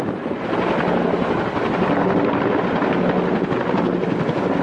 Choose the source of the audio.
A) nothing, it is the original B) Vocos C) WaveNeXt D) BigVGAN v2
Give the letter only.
A